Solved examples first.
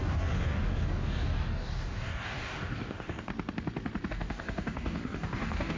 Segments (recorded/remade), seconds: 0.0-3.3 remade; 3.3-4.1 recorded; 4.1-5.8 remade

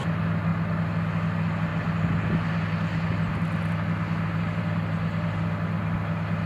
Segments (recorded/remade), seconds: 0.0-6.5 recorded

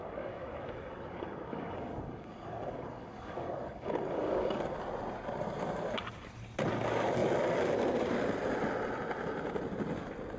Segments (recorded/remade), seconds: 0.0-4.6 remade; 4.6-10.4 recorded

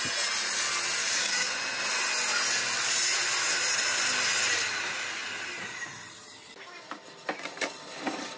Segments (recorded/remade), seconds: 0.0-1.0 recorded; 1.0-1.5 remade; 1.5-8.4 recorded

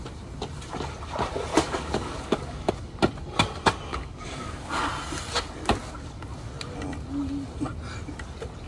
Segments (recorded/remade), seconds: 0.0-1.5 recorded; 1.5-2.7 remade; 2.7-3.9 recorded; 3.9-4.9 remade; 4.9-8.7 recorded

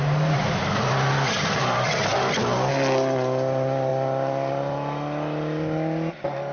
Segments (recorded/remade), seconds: 0.0-6.5 recorded

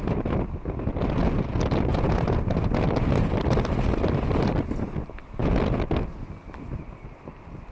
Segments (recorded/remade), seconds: 0.0-7.7 recorded